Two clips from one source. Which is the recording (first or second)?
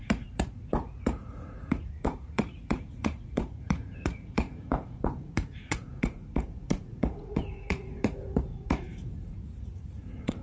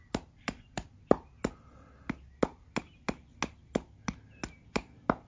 second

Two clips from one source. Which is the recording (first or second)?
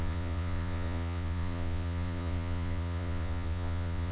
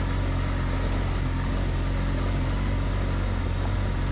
second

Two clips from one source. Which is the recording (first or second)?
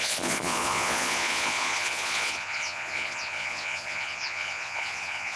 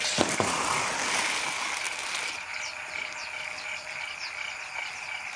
second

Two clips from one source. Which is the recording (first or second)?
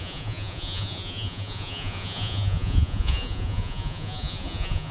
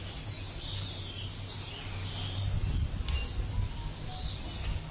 second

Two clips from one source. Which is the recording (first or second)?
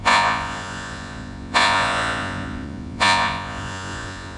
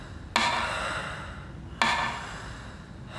second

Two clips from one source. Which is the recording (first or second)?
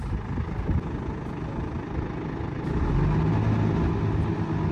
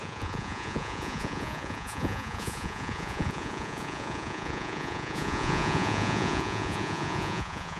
first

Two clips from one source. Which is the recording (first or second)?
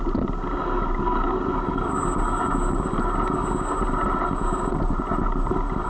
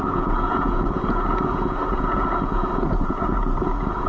first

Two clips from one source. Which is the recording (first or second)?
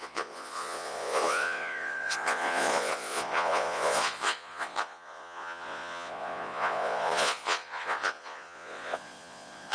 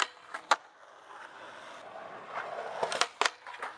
second